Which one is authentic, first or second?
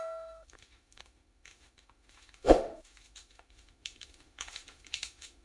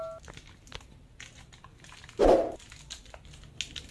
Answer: second